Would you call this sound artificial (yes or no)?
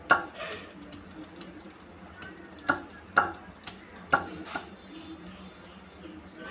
no